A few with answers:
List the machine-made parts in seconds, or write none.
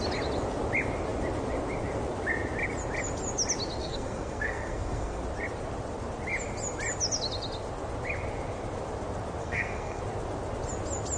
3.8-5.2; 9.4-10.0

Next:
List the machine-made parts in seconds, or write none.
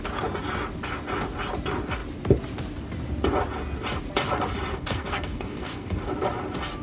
4.7-6.0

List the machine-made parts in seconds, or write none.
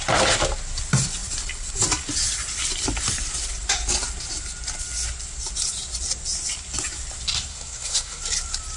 7.5-8.2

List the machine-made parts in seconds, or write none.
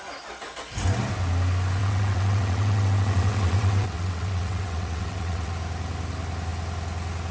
1.8-5.5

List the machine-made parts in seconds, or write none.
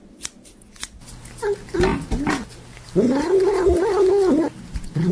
none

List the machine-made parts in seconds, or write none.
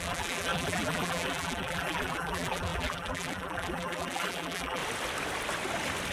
0.0-4.8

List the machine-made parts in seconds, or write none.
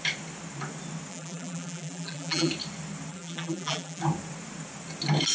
1.1-2.5; 3.1-4.0